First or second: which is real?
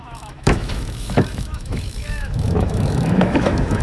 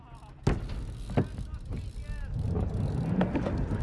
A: second